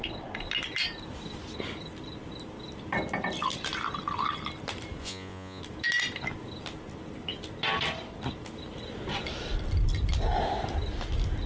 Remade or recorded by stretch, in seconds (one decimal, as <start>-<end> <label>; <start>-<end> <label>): 0.0-5.0 recorded; 5.0-5.6 remade; 5.6-11.5 recorded